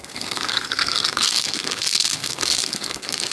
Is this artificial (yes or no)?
yes